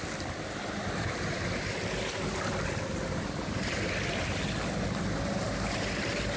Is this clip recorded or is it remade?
recorded